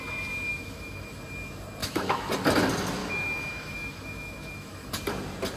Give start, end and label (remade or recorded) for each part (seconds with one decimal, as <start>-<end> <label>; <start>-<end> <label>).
0.0-0.5 recorded; 0.5-1.2 remade; 1.2-1.8 recorded; 1.8-2.3 remade; 2.3-3.0 recorded; 3.0-4.9 remade; 4.9-5.6 recorded